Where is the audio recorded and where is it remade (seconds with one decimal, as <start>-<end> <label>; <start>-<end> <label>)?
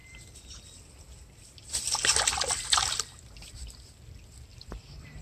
0.0-0.6 remade; 0.6-4.5 recorded; 4.5-5.2 remade